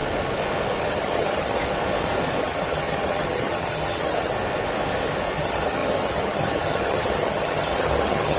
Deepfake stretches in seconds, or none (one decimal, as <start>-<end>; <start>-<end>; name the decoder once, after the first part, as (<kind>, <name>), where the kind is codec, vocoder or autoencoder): 0.8-1.6 (vocoder, HiFi-GAN); 2.4-4.3; 5.3-8.4